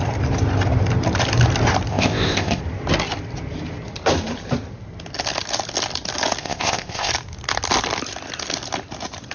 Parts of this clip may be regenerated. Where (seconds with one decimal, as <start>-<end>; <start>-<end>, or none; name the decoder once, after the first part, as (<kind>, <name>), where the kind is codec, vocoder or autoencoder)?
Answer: 1.9-2.6 (codec, ZipCodec); 6.4-7.1